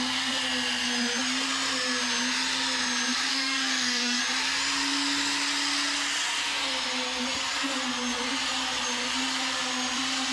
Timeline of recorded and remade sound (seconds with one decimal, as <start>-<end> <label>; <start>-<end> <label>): 0.0-3.3 recorded; 3.3-4.2 remade; 4.2-10.3 recorded